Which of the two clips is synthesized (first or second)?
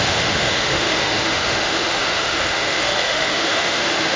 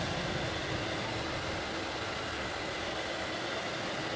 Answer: first